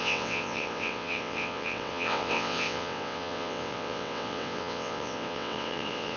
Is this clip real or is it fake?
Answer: fake